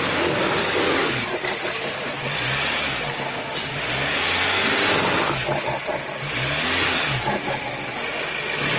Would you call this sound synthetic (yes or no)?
no